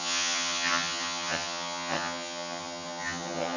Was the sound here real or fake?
fake